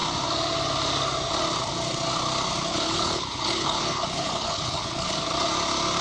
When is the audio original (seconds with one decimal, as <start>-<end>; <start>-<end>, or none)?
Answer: 0.0-2.7; 5.2-6.0